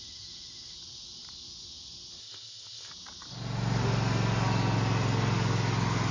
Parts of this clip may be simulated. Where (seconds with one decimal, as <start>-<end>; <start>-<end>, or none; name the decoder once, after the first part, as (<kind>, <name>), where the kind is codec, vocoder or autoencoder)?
2.2-2.9 (codec, ZipCodec)